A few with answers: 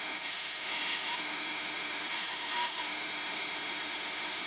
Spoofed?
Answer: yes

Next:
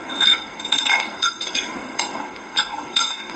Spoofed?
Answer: yes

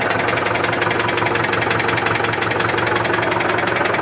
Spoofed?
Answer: no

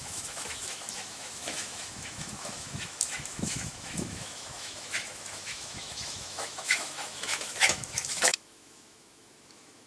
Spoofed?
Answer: yes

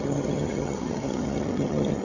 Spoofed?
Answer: yes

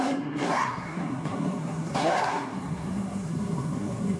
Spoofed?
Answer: yes